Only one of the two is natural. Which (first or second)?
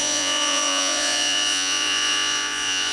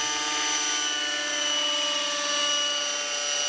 second